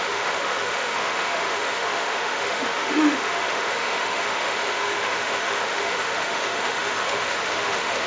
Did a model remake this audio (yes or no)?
yes